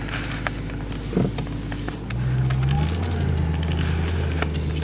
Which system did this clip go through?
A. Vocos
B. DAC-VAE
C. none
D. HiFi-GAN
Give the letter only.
C